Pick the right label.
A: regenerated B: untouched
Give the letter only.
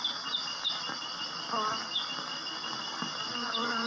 B